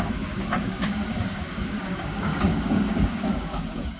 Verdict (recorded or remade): remade